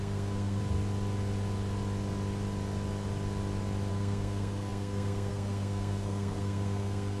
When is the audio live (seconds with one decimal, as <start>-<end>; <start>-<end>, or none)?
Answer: 0.6-3.9